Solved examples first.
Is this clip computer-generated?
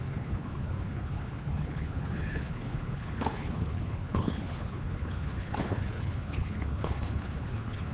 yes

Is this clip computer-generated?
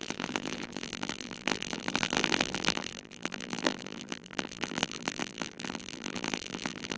yes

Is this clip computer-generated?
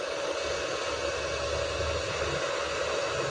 no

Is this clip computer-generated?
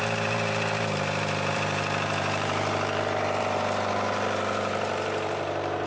yes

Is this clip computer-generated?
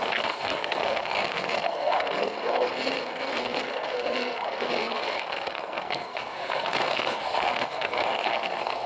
yes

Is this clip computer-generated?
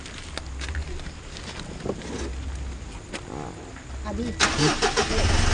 no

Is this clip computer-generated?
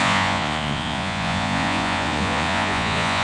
yes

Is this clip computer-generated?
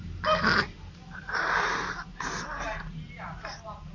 yes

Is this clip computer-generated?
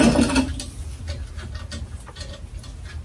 no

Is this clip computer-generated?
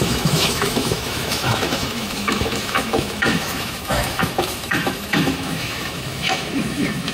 yes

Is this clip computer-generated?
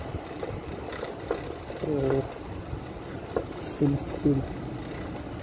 no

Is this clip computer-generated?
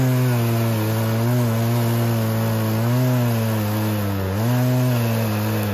no